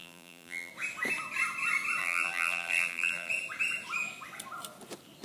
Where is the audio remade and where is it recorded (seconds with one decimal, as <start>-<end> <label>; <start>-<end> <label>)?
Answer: 0.0-0.7 remade; 0.7-2.0 recorded; 2.0-3.3 remade; 3.3-5.2 recorded